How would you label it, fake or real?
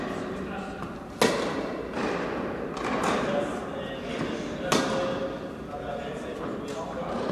real